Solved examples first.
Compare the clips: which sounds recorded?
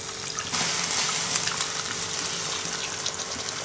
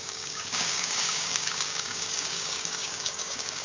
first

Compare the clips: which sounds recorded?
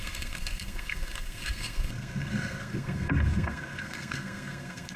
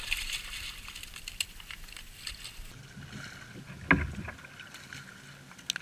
second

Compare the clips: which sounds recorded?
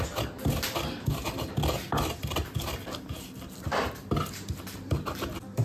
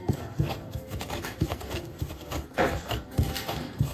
first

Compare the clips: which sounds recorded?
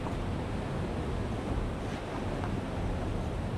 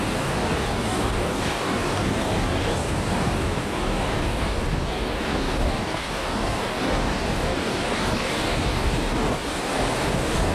first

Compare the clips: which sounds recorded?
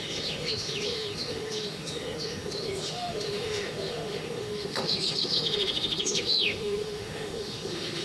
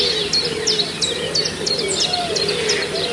second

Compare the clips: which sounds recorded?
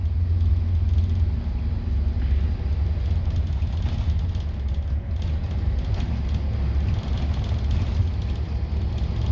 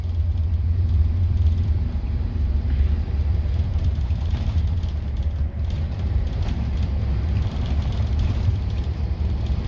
first